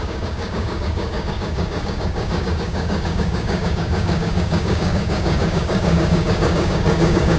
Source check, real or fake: fake